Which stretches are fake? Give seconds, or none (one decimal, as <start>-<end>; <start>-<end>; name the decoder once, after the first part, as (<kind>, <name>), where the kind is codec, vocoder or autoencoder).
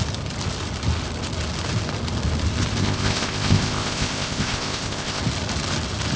2.8-5.2 (codec, ZipCodec)